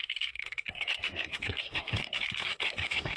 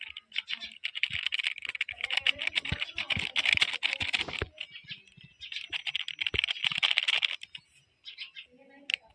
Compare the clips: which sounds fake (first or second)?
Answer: first